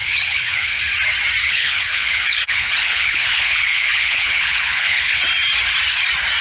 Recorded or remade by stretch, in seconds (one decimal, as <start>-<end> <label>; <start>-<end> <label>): 0.0-0.8 remade; 0.8-1.4 recorded; 1.4-5.2 remade; 5.2-6.4 recorded